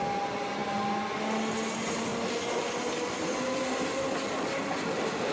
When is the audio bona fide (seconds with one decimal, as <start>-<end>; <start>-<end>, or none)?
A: 0.0-5.3